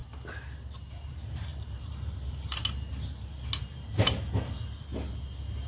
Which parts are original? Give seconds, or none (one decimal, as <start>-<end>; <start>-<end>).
0.0-0.9; 2.6-3.6; 4.9-5.7